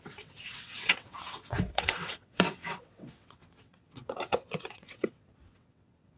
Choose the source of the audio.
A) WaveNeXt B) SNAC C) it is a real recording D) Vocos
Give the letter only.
A